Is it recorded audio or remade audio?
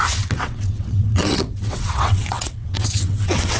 remade